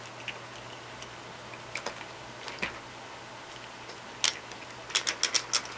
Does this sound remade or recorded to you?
recorded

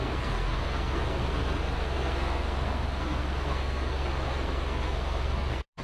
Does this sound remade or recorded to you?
remade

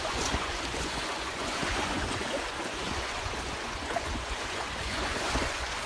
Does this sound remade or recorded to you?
remade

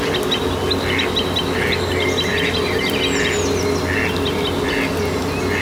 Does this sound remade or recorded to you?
recorded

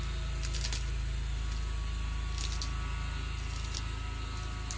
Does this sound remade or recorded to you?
recorded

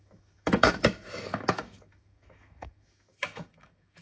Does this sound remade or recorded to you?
remade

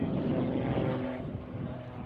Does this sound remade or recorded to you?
recorded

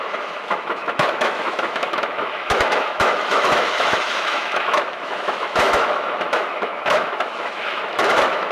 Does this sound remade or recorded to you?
remade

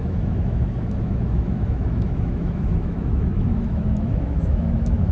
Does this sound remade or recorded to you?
remade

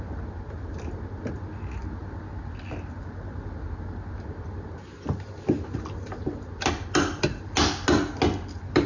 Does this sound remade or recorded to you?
recorded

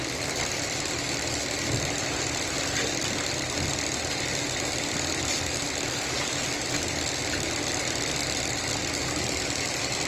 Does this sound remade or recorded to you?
recorded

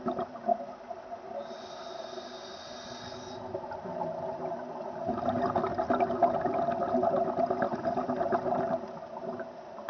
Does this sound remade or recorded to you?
recorded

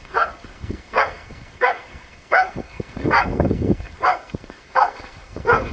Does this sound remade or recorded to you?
remade